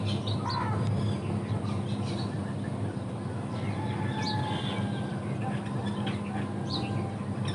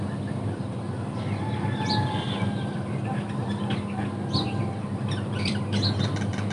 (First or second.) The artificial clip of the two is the second